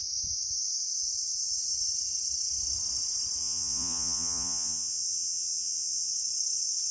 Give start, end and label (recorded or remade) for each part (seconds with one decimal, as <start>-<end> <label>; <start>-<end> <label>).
0.0-3.4 recorded; 3.4-6.1 remade; 6.1-6.9 recorded